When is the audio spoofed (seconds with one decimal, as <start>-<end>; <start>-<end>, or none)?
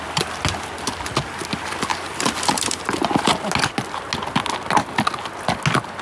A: none